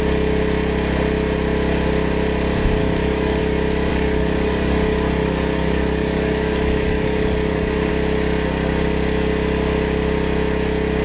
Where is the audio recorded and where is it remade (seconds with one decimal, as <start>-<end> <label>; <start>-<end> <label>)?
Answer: 0.0-2.8 recorded; 2.8-3.4 remade; 3.4-3.9 recorded; 3.9-7.9 remade; 7.9-11.0 recorded